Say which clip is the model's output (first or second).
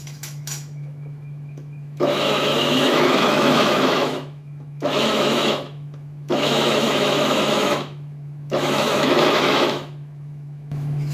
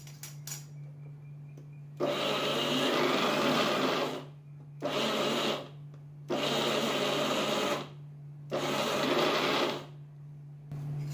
first